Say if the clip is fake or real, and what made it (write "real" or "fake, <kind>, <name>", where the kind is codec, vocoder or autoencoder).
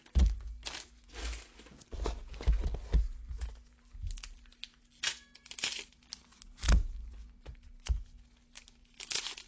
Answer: real